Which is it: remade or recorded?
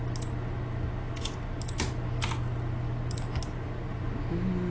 recorded